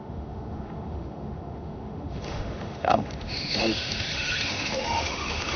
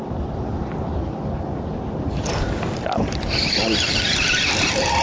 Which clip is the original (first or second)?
second